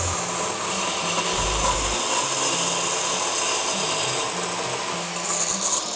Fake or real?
real